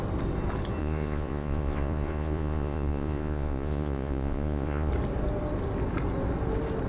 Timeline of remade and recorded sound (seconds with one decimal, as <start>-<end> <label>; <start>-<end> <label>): 0.0-0.8 recorded; 0.8-4.9 remade; 4.9-6.9 recorded